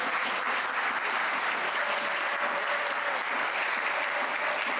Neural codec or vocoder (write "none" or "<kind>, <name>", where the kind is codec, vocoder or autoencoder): none